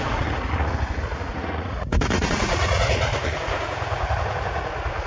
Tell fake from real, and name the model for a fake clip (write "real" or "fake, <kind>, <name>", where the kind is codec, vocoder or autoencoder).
fake, vocoder, Vocos